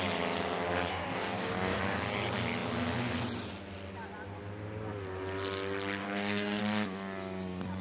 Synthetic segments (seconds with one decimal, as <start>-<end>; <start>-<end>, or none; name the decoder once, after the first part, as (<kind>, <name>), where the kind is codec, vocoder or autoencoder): 0.9-1.8 (codec, DAC); 6.0-6.6